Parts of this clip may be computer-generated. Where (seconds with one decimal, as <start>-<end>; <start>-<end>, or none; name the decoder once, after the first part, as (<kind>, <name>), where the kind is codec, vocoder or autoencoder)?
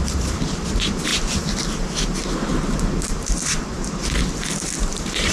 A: 0.0-1.1 (vocoder, BigVGAN v2); 1.8-2.5; 3.1-4.0; 4.8-5.3